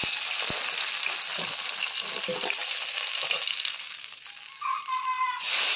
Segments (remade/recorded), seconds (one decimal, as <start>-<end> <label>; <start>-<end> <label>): 0.0-5.8 recorded